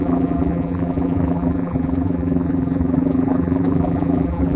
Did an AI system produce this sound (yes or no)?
yes